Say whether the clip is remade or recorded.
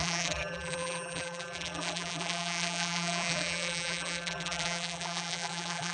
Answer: remade